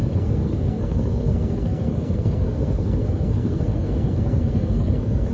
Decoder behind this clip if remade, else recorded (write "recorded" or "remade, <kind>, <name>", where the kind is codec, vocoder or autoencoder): remade, codec, SNAC